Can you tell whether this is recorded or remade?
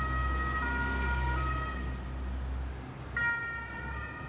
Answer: recorded